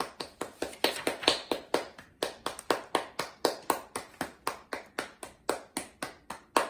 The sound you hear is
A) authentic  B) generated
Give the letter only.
A